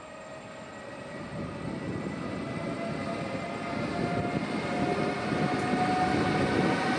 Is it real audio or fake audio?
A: real